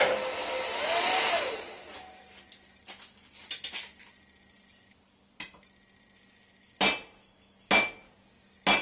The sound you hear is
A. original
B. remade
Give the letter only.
A